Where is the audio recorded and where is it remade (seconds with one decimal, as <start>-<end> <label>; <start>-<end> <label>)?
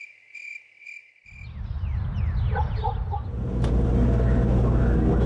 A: 0.0-5.3 recorded